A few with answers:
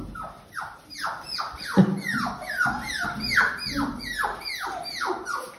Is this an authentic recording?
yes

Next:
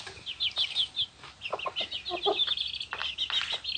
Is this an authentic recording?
yes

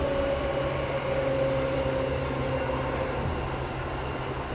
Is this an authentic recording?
yes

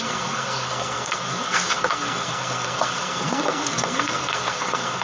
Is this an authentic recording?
no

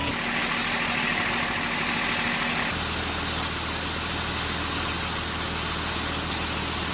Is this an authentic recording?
yes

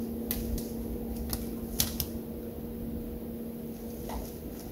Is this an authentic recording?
yes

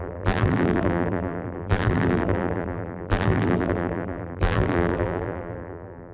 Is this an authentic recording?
no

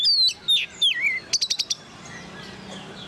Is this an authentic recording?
yes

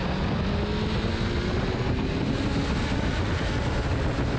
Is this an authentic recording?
yes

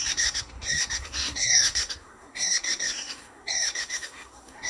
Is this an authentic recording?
no